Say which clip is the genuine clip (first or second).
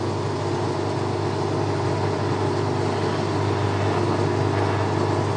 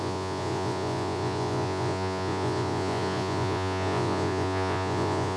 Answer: first